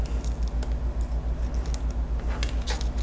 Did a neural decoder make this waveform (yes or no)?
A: no